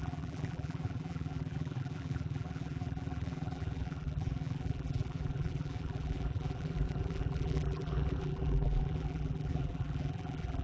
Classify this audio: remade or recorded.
remade